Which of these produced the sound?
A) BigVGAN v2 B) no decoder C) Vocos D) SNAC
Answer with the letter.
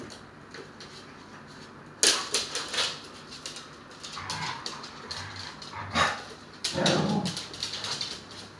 B